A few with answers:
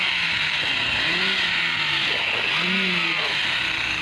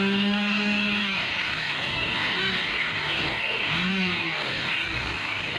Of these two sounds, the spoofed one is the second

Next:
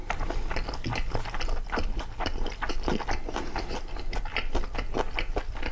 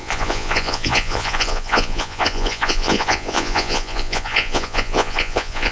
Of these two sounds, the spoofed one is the second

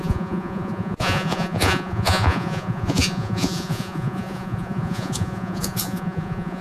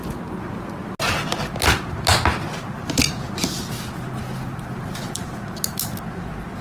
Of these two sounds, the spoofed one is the first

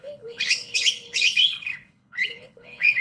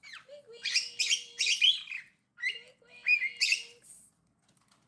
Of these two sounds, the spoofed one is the first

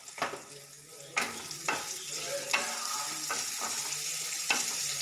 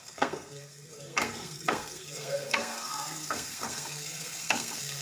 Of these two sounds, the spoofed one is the second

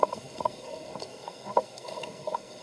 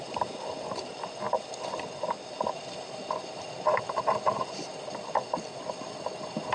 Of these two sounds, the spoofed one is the first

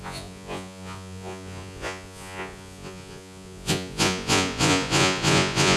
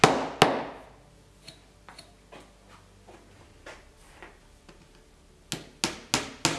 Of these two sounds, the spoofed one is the first